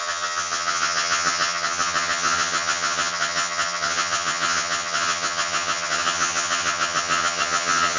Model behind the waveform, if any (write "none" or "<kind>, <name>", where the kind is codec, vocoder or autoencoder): vocoder, HiFi-GAN